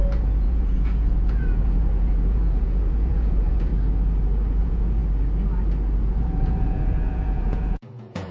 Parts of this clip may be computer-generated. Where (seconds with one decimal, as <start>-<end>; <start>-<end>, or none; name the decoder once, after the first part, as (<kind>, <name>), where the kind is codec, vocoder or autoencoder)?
0.0-3.7 (vocoder, Vocos); 4.6-5.0; 6.2-8.3